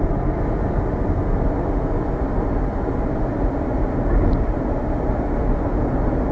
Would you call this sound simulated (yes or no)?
no